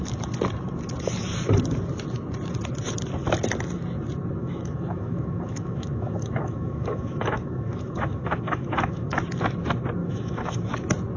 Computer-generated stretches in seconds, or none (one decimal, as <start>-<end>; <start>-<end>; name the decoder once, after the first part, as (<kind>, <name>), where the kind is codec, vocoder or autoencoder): 4.4-9.1 (autoencoder, DAC-VAE); 10.0-10.6